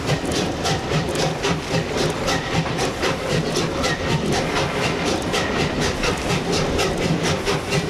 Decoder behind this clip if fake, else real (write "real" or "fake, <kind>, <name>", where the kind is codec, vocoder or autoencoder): real